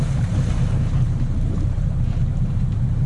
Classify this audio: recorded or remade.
remade